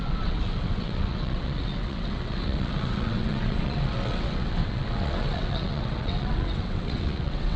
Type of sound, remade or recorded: remade